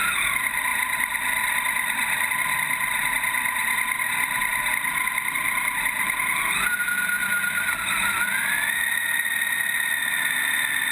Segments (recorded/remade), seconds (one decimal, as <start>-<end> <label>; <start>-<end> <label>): 0.0-10.9 recorded